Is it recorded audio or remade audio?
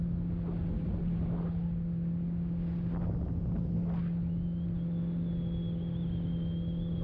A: recorded